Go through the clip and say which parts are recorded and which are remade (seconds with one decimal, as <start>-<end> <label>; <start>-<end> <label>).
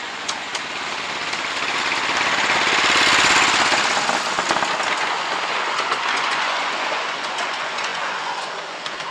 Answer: 0.0-0.5 remade; 0.5-5.0 recorded; 5.0-9.1 remade